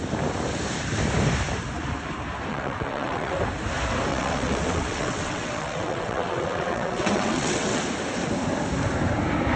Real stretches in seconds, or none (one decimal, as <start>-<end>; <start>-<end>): 0.0-2.5; 3.4-4.1; 7.8-9.6